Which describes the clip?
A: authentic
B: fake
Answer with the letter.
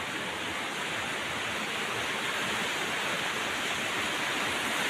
A